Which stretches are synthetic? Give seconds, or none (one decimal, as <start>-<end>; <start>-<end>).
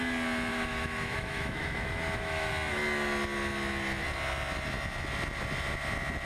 0.5-2.5